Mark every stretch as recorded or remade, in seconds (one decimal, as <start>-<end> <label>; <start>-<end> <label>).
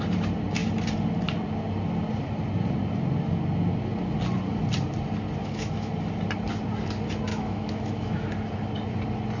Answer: 0.0-5.4 recorded; 5.4-5.9 remade; 5.9-7.3 recorded; 7.3-8.3 remade; 8.3-9.4 recorded